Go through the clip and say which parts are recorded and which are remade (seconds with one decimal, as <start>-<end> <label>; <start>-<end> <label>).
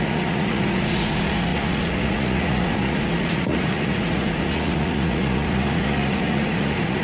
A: 0.0-7.0 remade